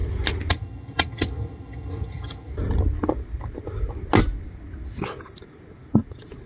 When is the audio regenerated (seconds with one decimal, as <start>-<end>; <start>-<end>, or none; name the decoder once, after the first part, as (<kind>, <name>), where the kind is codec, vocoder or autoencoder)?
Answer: 0.5-2.5 (vocoder, HiFi-GAN)